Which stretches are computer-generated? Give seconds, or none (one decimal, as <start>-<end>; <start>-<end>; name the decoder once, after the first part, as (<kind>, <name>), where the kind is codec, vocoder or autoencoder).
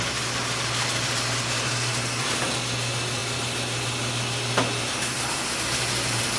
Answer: none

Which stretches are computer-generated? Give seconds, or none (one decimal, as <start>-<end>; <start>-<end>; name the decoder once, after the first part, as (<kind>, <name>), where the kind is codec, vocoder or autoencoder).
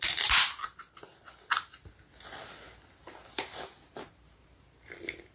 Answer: none